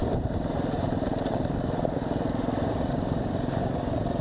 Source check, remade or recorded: remade